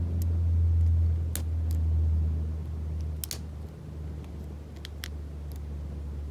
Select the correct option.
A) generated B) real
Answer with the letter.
B